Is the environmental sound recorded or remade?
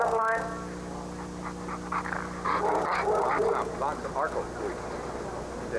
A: remade